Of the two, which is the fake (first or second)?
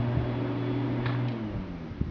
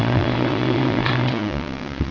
second